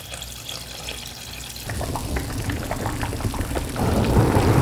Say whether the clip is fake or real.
real